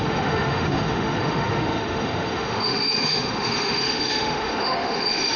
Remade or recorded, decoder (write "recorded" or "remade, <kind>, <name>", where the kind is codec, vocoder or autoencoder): remade, autoencoder, DAC-VAE